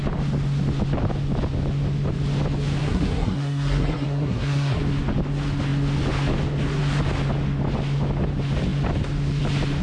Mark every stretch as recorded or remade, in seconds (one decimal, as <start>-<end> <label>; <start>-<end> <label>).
0.0-2.8 recorded; 2.8-4.8 remade; 4.8-9.8 recorded

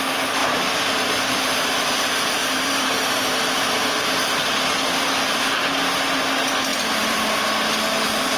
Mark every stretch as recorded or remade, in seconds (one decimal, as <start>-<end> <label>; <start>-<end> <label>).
0.0-0.4 recorded; 0.4-1.8 remade; 1.8-2.4 recorded; 2.4-4.2 remade; 4.2-6.7 recorded; 6.7-7.2 remade; 7.2-8.4 recorded